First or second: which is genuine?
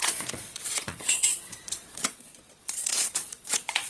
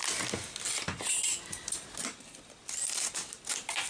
second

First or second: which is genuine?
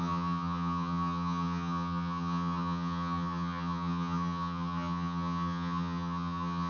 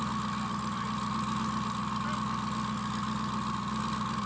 second